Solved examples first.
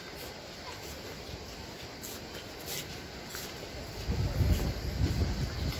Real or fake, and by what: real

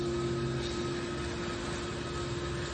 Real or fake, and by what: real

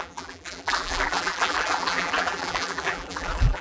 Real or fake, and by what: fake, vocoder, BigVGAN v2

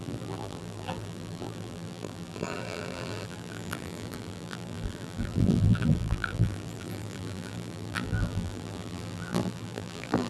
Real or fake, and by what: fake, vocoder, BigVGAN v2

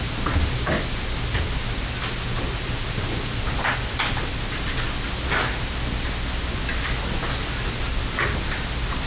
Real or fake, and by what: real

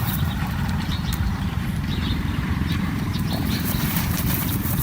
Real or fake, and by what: fake, vocoder, BigVGAN v2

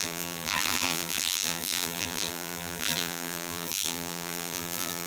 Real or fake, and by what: fake, vocoder, BigVGAN v2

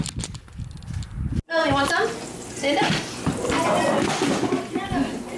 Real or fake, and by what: real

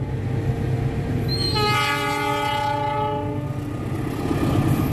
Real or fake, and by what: real